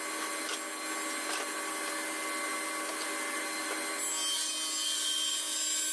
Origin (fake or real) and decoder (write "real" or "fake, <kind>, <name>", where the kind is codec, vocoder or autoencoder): real